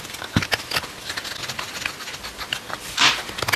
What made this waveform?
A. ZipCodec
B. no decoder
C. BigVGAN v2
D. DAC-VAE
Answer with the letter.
B